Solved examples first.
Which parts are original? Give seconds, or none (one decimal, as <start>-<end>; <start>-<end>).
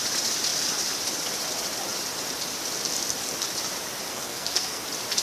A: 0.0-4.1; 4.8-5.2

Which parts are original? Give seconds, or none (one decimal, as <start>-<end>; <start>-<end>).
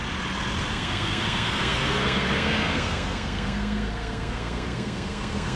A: 0.0-0.7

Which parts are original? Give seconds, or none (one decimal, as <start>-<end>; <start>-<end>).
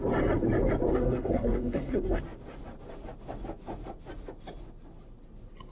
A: 0.0-0.9; 2.2-5.7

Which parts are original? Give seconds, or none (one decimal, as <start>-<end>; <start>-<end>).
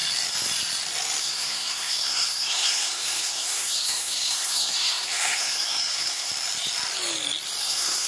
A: 0.0-1.2; 6.3-7.6